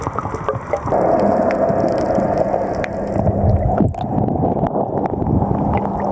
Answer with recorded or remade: recorded